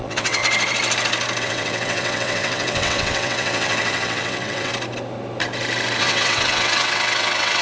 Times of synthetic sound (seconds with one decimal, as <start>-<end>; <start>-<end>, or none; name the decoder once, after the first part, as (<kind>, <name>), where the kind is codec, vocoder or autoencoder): 0.0-0.4 (vocoder, WaveNeXt); 1.4-4.7; 6.0-7.6